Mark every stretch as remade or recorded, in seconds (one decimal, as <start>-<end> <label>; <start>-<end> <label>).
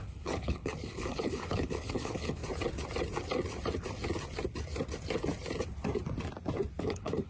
0.0-2.4 remade; 2.4-6.8 recorded; 6.8-7.3 remade